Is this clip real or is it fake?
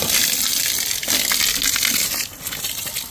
real